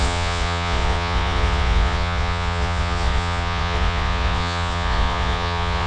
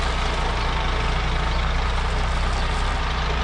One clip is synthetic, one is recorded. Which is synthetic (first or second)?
first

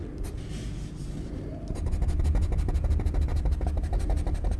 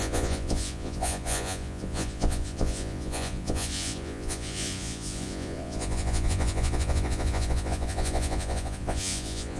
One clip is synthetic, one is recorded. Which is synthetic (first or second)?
second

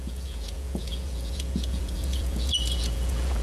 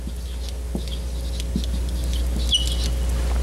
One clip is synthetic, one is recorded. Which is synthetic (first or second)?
first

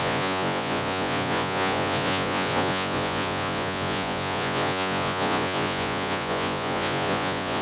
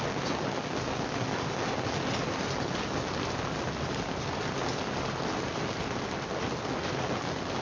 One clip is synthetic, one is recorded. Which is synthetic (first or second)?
first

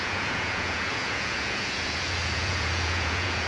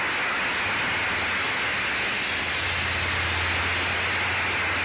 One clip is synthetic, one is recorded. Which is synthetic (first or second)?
first